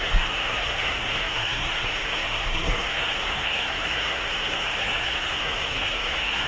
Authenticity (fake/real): fake